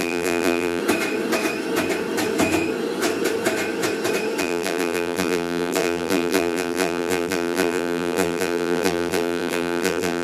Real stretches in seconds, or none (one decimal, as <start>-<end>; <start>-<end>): 0.8-4.4